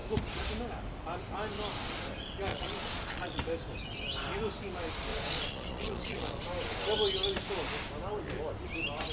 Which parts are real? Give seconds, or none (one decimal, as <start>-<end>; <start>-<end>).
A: 0.0-2.5; 3.4-5.1; 6.4-9.1